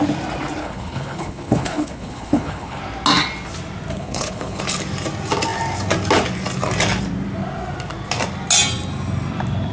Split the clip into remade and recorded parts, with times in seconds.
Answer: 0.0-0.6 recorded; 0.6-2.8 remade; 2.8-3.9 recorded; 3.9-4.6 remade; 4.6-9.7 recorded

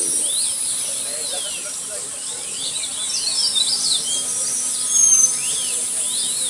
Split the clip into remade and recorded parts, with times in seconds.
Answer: 0.0-0.6 recorded; 0.6-2.5 remade; 2.5-3.4 recorded; 3.4-4.1 remade; 4.1-5.3 recorded; 5.3-6.0 remade; 6.0-6.5 recorded